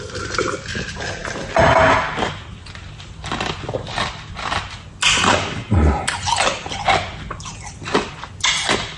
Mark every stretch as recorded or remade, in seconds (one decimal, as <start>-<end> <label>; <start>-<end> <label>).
0.0-9.0 recorded